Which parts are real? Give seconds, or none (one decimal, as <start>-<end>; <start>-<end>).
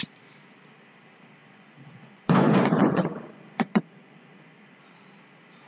0.0-1.4; 4.8-5.7